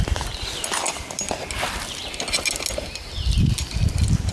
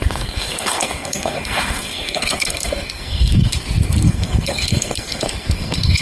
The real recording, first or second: first